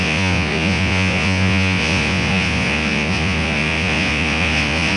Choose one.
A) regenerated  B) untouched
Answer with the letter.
A